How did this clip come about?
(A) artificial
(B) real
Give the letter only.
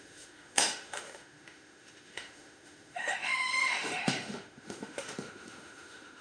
A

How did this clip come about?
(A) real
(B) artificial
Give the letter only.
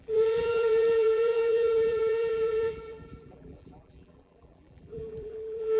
B